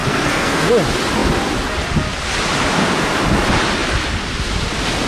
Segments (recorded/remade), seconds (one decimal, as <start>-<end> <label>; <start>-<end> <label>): 0.0-0.7 remade; 0.7-5.1 recorded